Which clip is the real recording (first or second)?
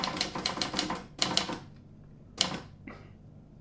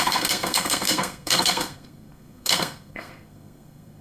first